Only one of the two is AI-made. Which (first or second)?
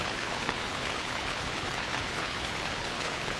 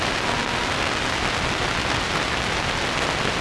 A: first